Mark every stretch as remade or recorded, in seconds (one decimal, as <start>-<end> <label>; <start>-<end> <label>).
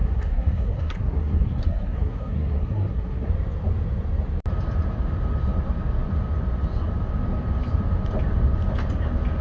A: 0.0-3.3 remade; 3.3-9.4 recorded